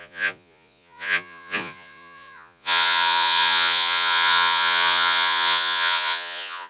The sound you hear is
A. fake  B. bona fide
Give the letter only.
A